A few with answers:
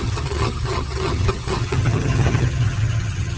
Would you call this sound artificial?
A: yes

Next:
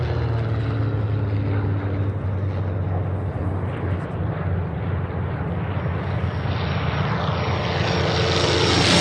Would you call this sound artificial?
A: no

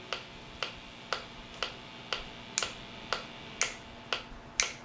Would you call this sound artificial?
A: no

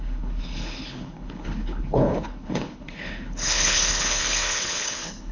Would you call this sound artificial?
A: yes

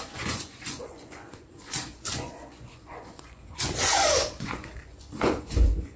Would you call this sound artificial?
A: yes